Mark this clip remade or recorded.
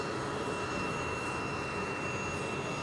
recorded